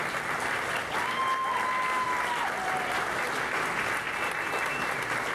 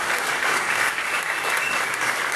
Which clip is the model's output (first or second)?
second